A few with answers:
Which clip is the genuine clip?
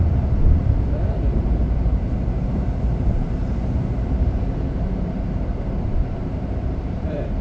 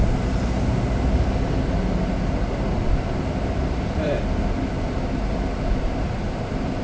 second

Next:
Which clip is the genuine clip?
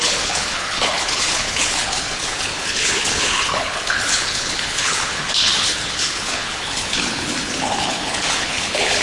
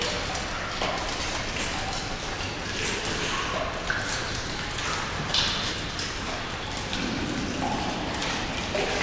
second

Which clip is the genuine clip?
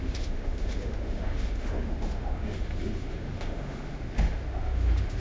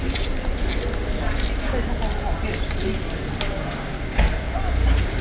second